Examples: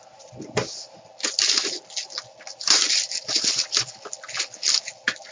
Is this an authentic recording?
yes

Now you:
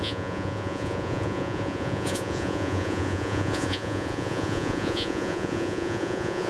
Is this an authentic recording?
no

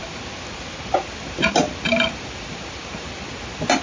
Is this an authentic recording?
yes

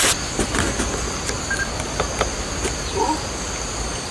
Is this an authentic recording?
yes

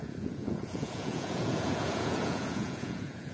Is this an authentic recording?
no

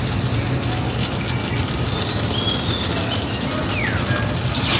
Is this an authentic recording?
yes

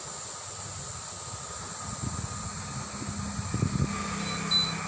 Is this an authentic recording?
yes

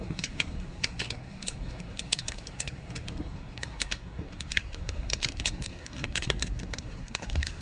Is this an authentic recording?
no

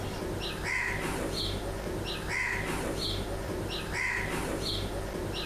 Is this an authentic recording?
yes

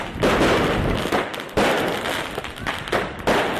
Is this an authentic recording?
yes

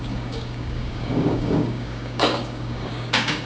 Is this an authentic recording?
no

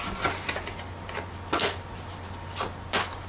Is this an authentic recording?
yes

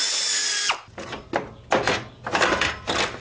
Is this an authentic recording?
yes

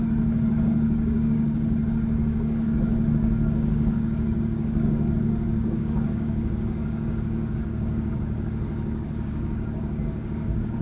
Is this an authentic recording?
no